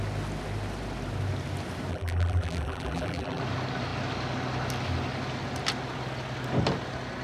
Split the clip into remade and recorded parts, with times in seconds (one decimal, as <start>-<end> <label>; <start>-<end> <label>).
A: 0.0-1.9 recorded; 1.9-3.4 remade; 3.4-7.2 recorded